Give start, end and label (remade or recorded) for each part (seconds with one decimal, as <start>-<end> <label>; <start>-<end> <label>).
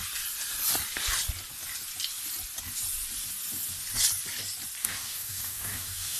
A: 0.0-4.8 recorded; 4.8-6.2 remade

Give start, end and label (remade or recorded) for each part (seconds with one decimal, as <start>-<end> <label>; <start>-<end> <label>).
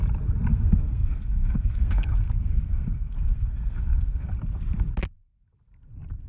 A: 0.0-0.5 recorded; 0.5-4.3 remade; 4.3-6.3 recorded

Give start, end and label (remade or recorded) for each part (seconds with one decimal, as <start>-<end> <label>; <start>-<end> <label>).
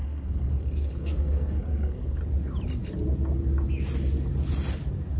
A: 0.0-2.2 remade; 2.2-5.2 recorded